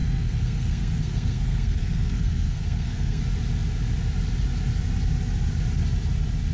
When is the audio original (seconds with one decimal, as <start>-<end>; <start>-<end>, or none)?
3.2-6.5